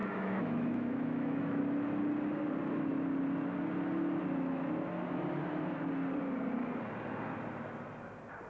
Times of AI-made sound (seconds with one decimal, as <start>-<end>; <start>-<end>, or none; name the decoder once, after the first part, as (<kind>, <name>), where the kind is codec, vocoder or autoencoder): 0.0-1.6 (autoencoder, DAC-VAE)